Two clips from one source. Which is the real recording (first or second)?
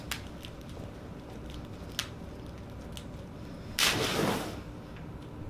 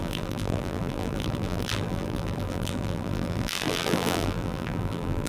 first